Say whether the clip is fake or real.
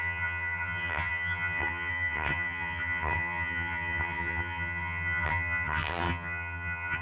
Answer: fake